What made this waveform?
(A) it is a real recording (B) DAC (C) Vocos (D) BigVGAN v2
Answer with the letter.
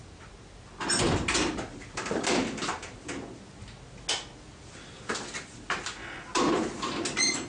A